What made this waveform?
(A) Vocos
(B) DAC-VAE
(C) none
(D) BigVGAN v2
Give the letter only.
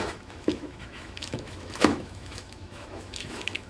B